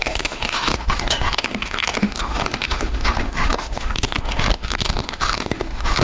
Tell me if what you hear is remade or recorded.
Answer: remade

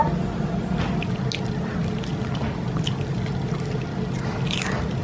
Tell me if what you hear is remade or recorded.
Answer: recorded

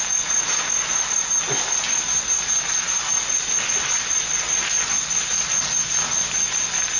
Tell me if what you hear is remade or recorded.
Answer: recorded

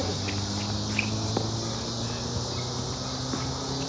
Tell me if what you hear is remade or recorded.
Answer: recorded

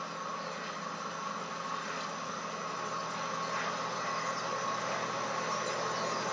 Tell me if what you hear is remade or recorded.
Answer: recorded